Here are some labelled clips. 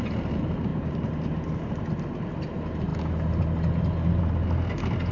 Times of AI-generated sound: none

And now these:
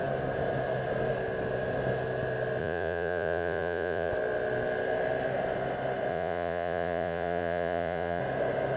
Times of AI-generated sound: 2.6-4.1 (vocoder, Vocos); 6.1-8.2

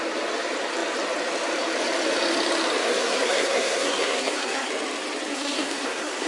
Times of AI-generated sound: 2.8-4.7 (codec, SNAC); 5.3-6.3